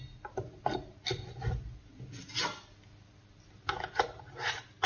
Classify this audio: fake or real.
real